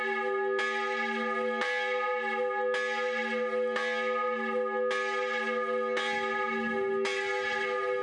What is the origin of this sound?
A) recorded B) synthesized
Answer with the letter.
A